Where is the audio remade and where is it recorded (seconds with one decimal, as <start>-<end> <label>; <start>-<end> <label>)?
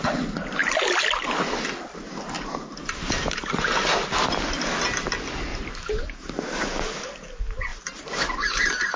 0.0-5.5 recorded; 5.5-6.9 remade; 6.9-7.7 recorded; 7.7-8.6 remade; 8.6-9.0 recorded